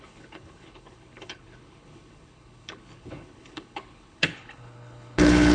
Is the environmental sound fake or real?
fake